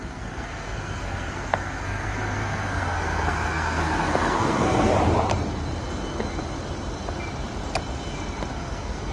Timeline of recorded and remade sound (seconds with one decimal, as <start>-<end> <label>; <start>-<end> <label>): 0.0-4.9 remade; 4.9-8.5 recorded; 8.5-9.1 remade